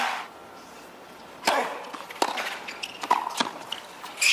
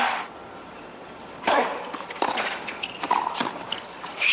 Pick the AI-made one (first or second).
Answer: second